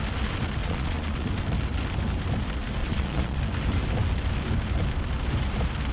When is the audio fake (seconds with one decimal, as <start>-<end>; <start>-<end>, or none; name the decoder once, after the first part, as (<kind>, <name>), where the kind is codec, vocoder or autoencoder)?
0.6-1.3 (vocoder, Vocos); 2.8-3.4